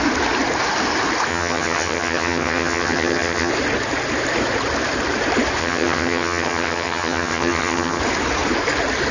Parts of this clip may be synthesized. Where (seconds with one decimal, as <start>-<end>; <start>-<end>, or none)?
1.3-3.5; 5.6-8.0